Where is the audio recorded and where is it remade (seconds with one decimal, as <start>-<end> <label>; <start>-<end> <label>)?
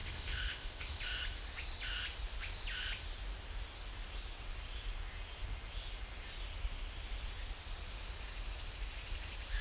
0.0-1.0 remade; 1.0-9.6 recorded